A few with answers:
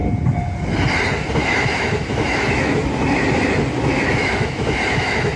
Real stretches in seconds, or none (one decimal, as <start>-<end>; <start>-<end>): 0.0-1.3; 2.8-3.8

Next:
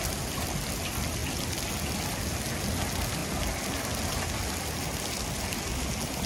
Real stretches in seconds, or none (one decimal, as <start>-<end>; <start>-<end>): 0.0-6.3

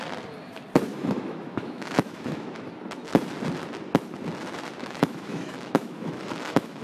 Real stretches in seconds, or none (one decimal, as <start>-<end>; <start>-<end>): 0.0-0.9; 2.7-4.8